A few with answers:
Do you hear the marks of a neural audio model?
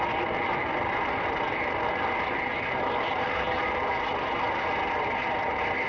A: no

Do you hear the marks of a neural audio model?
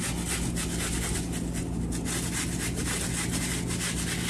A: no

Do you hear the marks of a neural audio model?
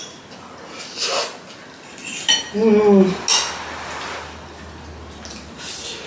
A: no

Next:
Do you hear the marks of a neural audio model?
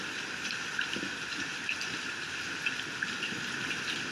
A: yes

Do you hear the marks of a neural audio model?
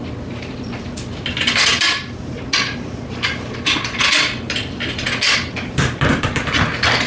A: no